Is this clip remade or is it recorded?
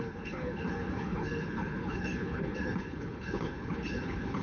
remade